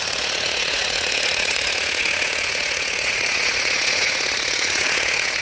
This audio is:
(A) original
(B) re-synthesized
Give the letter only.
B